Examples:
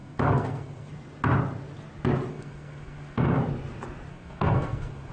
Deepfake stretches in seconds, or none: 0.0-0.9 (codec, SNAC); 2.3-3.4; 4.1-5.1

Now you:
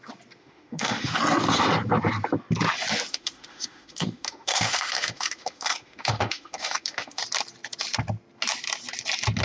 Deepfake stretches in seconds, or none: 0.4-1.2 (autoencoder, DAC-VAE); 3.1-7.2